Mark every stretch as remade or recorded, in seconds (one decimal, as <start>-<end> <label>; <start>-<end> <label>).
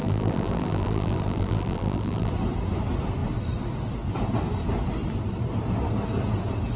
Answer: 0.0-2.3 remade; 2.3-6.8 recorded